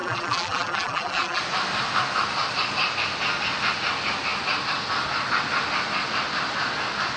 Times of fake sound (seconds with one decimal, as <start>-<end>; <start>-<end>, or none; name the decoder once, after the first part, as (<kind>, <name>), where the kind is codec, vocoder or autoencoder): 0.0-1.4 (vocoder, BigVGAN v2)